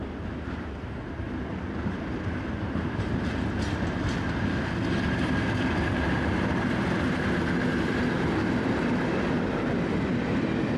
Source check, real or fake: real